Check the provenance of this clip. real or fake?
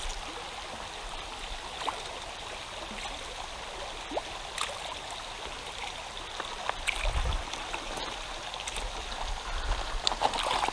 real